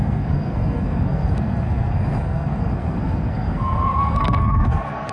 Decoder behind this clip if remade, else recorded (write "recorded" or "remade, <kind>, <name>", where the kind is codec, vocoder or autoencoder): remade, codec, SNAC